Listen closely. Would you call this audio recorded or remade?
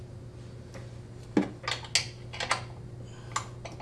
recorded